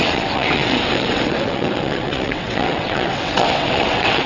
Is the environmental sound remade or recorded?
remade